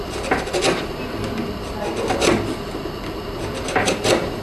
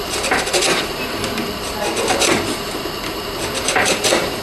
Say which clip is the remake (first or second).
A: second